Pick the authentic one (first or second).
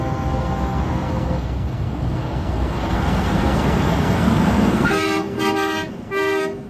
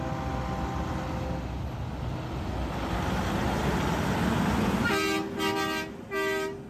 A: second